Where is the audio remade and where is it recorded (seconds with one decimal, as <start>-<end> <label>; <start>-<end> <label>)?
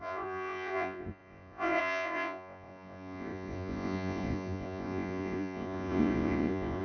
0.0-6.8 remade